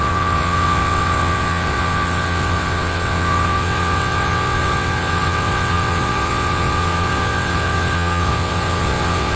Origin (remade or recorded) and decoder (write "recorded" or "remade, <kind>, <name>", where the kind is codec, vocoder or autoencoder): remade, vocoder, WaveNeXt